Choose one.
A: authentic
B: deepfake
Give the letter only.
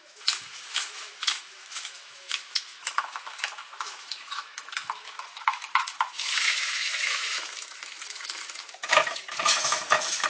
B